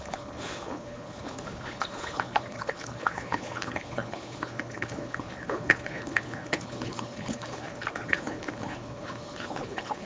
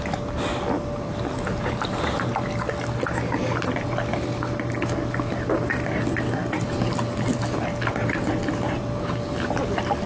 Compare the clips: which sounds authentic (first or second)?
second